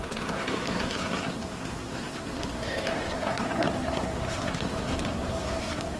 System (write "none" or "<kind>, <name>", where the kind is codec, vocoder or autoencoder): codec, SNAC